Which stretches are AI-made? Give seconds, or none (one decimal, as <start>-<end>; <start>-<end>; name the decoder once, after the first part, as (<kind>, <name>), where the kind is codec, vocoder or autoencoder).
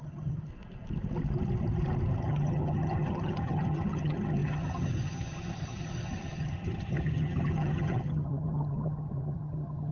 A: 0.0-0.5 (vocoder, HiFi-GAN); 2.2-9.9